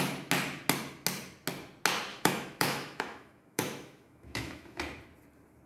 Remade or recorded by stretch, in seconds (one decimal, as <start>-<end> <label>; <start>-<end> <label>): 0.0-2.1 recorded; 2.1-4.8 remade; 4.8-5.7 recorded